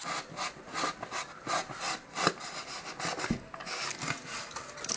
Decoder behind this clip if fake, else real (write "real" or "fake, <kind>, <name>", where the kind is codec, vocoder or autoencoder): real